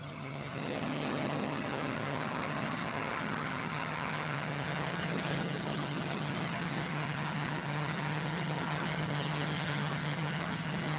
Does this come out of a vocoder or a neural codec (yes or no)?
yes